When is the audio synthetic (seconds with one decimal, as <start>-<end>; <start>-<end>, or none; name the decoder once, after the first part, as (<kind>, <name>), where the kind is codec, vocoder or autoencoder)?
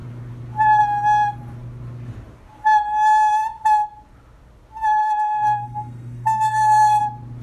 5.0-7.0 (codec, SNAC)